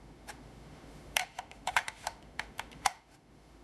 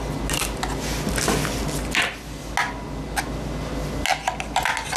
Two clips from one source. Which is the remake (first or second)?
first